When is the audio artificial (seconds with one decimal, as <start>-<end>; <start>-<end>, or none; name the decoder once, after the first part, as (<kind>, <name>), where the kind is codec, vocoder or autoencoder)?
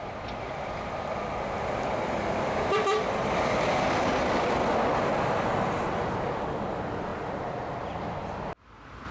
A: none